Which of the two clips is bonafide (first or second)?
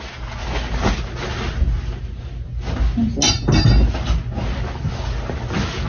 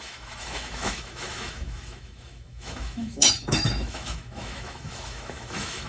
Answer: first